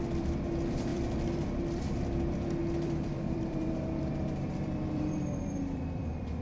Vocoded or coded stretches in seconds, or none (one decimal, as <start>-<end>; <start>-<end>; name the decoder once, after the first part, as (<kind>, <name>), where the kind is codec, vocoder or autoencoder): 0.9-1.6 (vocoder, BigVGAN v2); 2.6-6.4